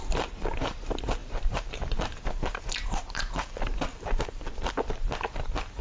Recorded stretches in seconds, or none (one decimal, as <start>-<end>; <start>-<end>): 0.0-1.2; 4.7-5.8